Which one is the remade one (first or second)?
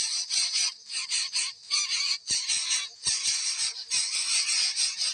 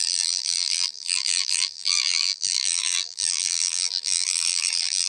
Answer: second